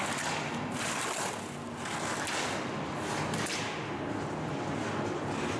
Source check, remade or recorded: recorded